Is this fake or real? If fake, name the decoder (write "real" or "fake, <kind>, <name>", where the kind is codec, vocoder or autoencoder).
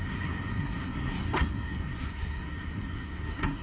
fake, codec, SNAC